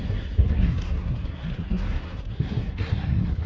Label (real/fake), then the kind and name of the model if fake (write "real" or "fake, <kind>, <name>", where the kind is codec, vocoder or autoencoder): fake, codec, SNAC